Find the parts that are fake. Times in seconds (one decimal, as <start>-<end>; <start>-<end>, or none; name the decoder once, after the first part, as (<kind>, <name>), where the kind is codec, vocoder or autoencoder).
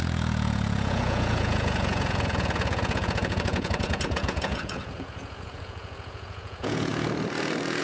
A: 0.0-6.9 (vocoder, Vocos)